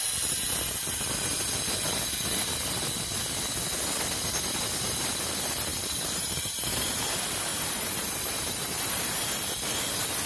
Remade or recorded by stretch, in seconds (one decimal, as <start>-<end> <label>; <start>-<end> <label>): 0.0-5.7 recorded; 5.7-7.0 remade; 7.0-7.5 recorded; 7.5-9.3 remade; 9.3-10.3 recorded